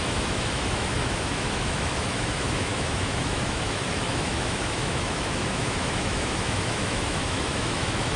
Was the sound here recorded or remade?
remade